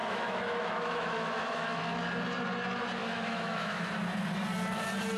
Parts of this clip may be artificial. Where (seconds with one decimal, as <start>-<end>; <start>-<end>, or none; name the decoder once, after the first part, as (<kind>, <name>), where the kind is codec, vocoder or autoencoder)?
0.0-1.8 (autoencoder, DAC-VAE); 3.0-3.9

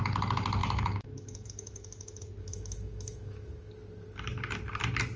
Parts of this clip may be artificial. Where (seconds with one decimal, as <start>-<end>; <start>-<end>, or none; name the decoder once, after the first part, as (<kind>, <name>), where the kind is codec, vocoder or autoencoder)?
0.6-3.7 (autoencoder, DAC-VAE)

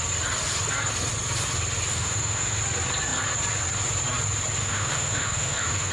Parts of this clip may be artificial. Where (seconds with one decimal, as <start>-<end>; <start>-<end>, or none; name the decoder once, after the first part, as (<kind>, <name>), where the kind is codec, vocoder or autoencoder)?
1.9-2.6 (autoencoder, DAC-VAE); 4.6-5.9

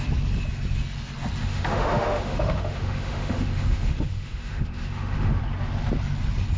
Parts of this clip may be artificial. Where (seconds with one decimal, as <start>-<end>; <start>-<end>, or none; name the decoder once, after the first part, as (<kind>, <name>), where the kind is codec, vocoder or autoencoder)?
1.4-5.4 (autoencoder, DAC-VAE)

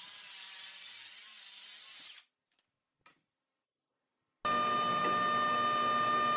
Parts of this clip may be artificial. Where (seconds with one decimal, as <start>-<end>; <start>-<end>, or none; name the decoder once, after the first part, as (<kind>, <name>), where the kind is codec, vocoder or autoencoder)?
none

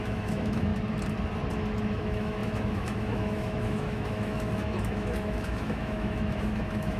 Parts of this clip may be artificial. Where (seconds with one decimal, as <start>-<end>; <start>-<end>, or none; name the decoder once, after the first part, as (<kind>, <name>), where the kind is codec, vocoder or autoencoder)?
0.0-0.7 (autoencoder, DAC-VAE); 1.8-7.0

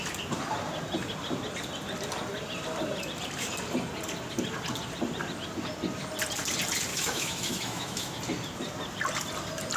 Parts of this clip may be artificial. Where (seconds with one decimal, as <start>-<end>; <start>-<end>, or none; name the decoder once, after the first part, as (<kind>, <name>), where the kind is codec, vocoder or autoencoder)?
6.9-8.2 (autoencoder, DAC-VAE)